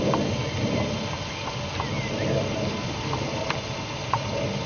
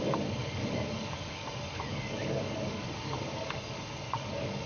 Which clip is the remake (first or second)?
second